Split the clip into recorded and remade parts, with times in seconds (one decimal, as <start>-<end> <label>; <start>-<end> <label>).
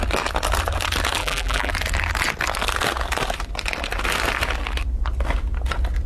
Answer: 0.0-1.2 recorded; 1.2-1.7 remade; 1.7-6.1 recorded